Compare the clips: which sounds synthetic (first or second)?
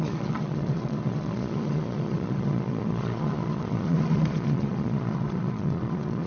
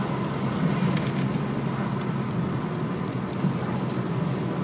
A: first